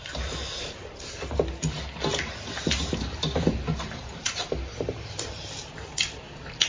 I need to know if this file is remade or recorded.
remade